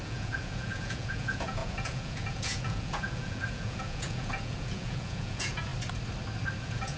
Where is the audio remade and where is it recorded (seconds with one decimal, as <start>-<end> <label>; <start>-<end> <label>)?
0.0-5.7 remade; 5.7-6.6 recorded; 6.6-7.0 remade